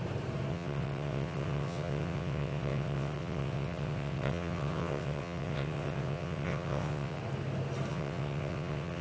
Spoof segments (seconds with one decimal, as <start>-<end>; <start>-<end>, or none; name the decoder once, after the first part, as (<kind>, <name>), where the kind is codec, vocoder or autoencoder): 0.5-7.2 (vocoder, WaveNeXt); 7.9-9.0